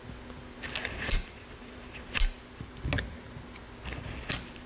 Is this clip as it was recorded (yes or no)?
yes